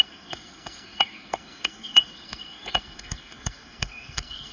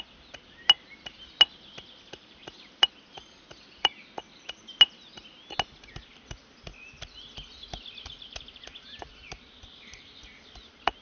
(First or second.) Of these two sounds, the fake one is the first